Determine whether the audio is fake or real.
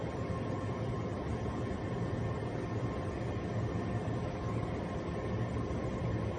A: real